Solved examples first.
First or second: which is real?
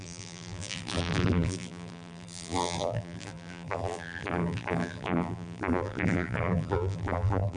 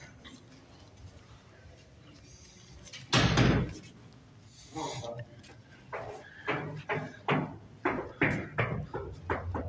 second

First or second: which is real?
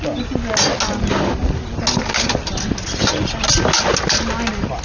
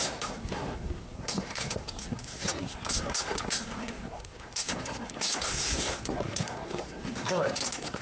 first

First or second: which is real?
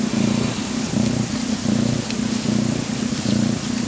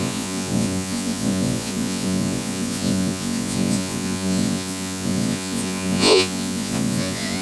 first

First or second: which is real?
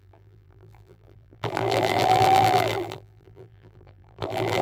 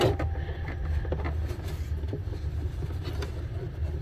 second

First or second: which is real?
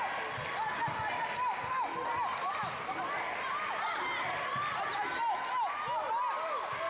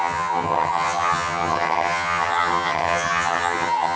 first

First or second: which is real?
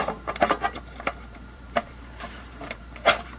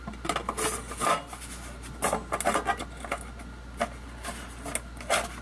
second